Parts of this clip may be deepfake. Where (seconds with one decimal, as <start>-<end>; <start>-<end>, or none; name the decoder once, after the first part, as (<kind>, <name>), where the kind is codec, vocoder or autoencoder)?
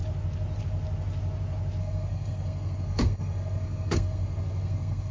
1.8-5.1 (codec, SNAC)